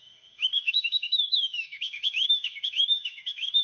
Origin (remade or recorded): remade